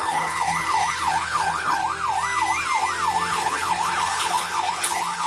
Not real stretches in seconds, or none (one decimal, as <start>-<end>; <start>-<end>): 0.0-1.8; 3.3-5.3